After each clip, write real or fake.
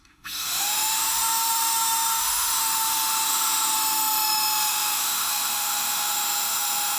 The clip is fake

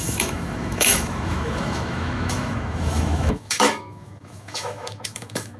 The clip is fake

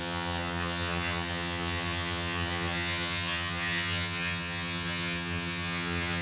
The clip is fake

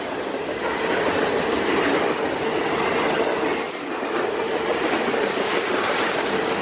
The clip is real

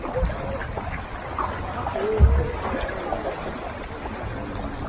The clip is real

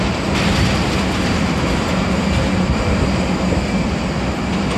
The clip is real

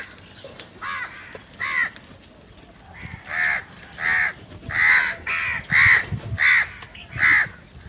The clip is real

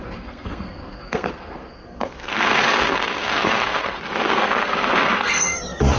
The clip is fake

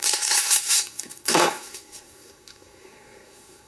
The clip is fake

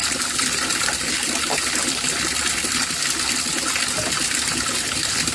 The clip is real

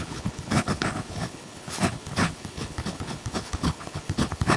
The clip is fake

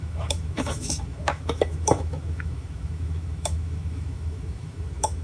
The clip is fake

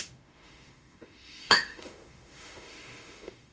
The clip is fake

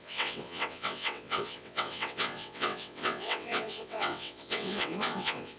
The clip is fake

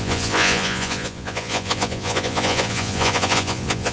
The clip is fake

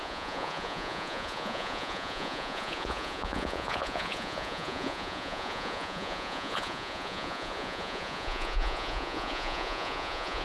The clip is fake